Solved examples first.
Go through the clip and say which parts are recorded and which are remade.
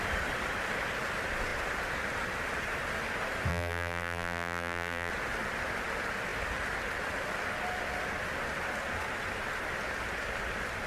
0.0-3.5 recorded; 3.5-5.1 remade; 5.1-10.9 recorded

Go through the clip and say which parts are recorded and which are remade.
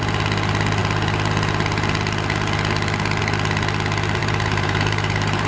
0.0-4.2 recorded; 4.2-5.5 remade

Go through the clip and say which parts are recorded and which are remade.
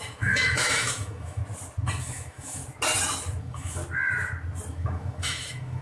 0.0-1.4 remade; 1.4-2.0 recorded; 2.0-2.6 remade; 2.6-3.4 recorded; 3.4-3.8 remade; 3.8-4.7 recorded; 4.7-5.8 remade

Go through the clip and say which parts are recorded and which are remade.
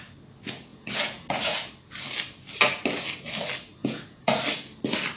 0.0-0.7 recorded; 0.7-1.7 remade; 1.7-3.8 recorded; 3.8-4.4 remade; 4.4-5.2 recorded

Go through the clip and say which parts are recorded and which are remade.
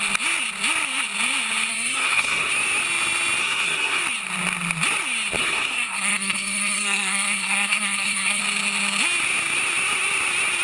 0.0-1.7 recorded; 1.7-2.5 remade; 2.5-3.4 recorded; 3.4-4.0 remade; 4.0-5.4 recorded; 5.4-8.4 remade; 8.4-10.6 recorded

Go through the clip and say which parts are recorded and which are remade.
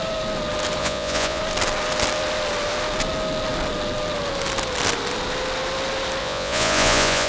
0.0-0.8 recorded; 0.8-1.4 remade; 1.4-6.2 recorded; 6.2-7.3 remade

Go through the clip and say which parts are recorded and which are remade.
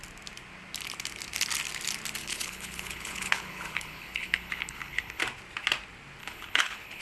0.0-2.2 recorded; 2.2-5.2 remade; 5.2-6.2 recorded; 6.2-7.0 remade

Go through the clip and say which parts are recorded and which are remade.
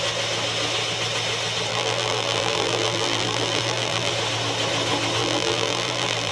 0.0-1.7 recorded; 1.7-4.1 remade; 4.1-5.2 recorded; 5.2-6.3 remade